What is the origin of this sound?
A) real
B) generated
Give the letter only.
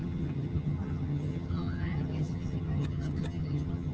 B